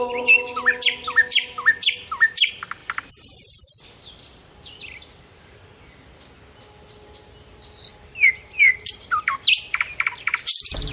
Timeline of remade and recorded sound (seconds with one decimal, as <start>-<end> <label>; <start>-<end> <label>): 0.0-2.8 recorded; 2.8-5.9 remade; 5.9-7.9 recorded; 7.9-10.5 remade; 10.5-10.9 recorded